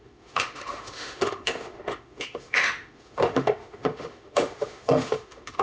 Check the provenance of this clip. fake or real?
fake